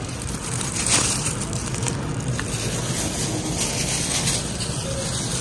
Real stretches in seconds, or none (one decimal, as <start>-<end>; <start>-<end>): 2.1-5.4